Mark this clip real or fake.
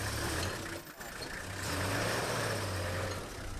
real